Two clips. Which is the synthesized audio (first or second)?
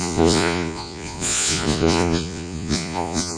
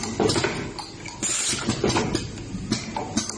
first